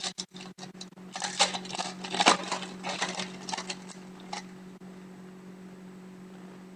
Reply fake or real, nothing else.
real